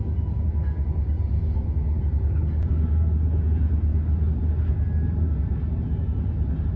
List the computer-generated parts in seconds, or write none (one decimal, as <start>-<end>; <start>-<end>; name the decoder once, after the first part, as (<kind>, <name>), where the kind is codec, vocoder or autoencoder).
none